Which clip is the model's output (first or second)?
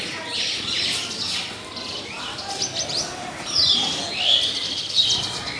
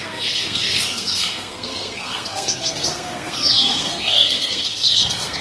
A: second